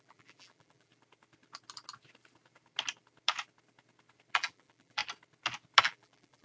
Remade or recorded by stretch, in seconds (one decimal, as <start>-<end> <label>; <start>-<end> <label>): 0.0-0.9 remade; 0.9-4.3 recorded; 4.3-5.0 remade; 5.0-5.8 recorded; 5.8-6.4 remade

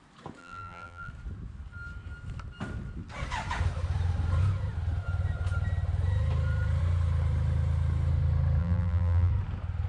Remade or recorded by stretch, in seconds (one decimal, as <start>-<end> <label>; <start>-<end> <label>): 0.0-0.4 recorded; 0.4-1.1 remade; 1.1-8.6 recorded; 8.6-9.3 remade; 9.3-9.9 recorded

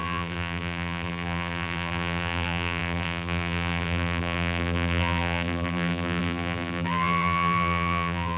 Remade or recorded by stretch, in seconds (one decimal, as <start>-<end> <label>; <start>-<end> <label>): 0.0-8.4 remade

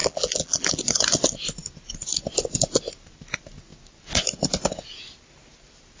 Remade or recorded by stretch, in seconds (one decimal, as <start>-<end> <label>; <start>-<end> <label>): 0.0-0.8 remade; 0.8-6.0 recorded

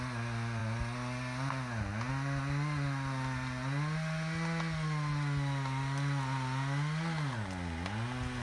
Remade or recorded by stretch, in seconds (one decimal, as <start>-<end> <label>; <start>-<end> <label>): 0.0-8.4 recorded